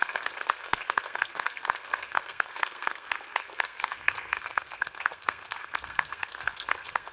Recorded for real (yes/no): no